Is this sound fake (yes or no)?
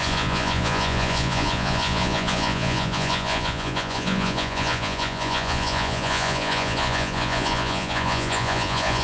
yes